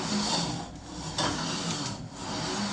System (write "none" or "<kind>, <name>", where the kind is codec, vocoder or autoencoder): none